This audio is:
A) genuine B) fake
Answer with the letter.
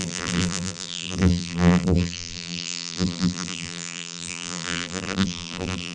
B